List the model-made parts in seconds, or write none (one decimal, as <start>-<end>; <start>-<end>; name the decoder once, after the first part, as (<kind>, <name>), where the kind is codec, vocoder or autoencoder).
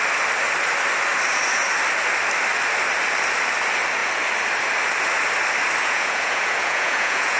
5.8-7.4 (vocoder, Vocos)